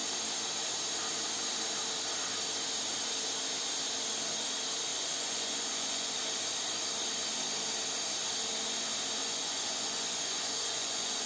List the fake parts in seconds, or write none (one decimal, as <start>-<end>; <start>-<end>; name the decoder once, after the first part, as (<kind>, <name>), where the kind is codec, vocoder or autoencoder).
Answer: 4.9-6.2 (vocoder, Vocos); 9.2-11.3